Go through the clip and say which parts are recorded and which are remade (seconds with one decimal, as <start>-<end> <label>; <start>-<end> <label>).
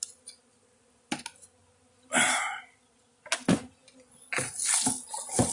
0.0-5.5 recorded